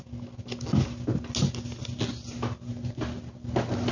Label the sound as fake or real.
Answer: real